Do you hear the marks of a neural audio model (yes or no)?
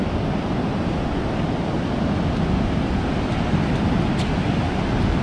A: no